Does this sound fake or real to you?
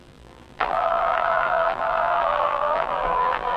fake